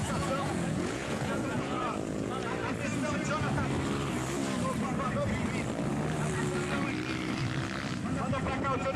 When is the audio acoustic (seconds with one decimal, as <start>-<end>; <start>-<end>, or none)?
2.3-9.0